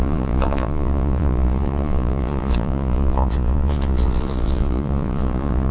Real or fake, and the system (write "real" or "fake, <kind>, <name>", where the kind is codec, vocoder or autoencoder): fake, vocoder, Vocos